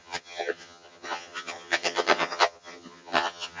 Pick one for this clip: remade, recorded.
remade